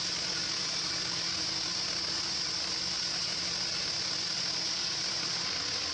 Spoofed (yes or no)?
no